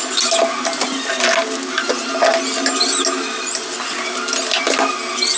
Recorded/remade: recorded